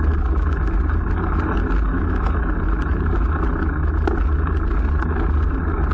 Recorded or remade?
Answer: recorded